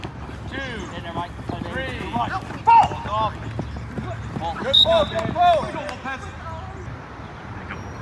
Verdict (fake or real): real